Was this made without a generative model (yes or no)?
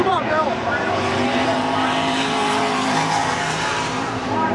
no